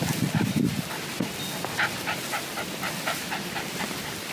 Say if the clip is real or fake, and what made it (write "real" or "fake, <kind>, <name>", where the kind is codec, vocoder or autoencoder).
real